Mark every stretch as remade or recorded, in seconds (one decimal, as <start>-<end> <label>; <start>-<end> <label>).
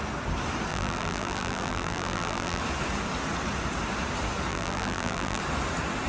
0.0-0.7 recorded; 0.7-2.6 remade; 2.6-4.5 recorded; 4.5-5.4 remade; 5.4-6.1 recorded